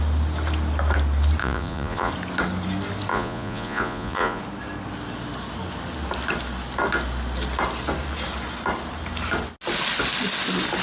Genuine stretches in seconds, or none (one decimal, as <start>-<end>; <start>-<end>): 0.0-1.4; 2.1-3.1; 4.4-10.8